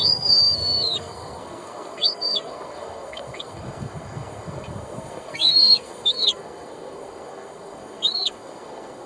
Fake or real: fake